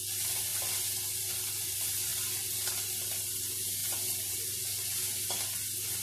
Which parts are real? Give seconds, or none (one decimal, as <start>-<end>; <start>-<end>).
0.0-0.5; 1.7-2.1; 3.3-6.0